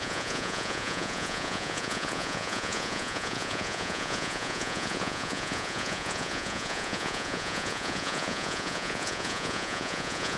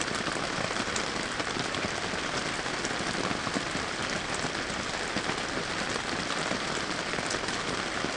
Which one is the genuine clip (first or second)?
second